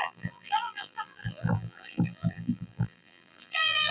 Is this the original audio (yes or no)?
no